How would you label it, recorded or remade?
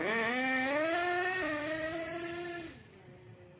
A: recorded